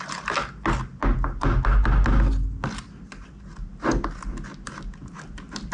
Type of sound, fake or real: real